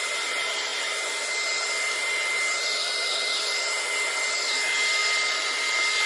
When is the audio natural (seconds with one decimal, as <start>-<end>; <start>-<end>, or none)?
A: 0.0-6.1